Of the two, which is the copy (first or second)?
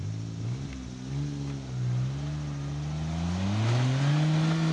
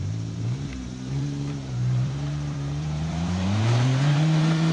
second